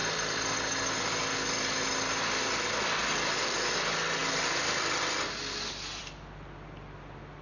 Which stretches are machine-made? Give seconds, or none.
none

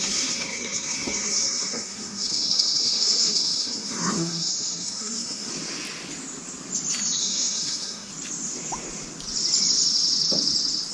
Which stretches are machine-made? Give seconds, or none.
0.0-5.5 (codec, SNAC); 7.2-8.1

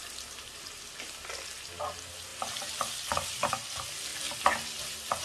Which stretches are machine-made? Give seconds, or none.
none